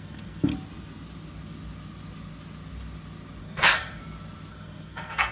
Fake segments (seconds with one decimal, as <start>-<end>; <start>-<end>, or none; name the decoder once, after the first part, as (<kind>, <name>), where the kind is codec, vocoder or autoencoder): 0.0-0.5 (codec, SNAC); 3.4-4.0; 4.5-5.3